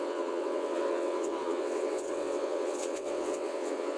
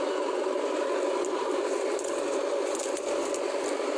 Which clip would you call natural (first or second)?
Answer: second